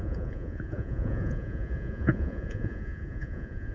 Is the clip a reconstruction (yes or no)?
yes